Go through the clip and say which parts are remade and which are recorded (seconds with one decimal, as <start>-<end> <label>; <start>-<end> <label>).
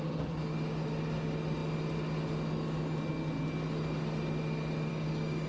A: 0.0-4.9 recorded; 4.9-5.5 remade